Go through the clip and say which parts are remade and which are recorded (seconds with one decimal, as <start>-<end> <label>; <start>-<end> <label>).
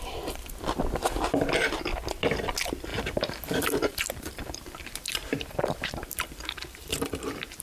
0.0-2.9 recorded; 2.9-7.6 remade